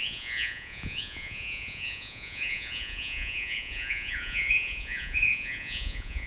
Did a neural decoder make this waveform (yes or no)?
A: yes